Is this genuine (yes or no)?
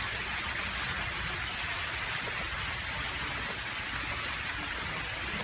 yes